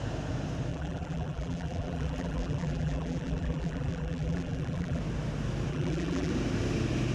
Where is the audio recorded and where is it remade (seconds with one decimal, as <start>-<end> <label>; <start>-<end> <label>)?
0.0-0.7 recorded; 0.7-5.0 remade; 5.0-5.7 recorded; 5.7-6.3 remade; 6.3-7.1 recorded